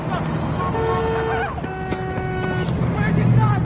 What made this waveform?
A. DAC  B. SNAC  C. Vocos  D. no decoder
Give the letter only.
D